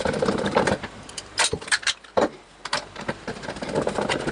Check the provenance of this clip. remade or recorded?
remade